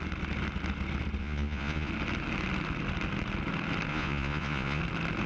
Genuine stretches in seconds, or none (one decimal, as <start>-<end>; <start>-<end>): 0.0-1.2; 1.9-3.9; 4.8-5.3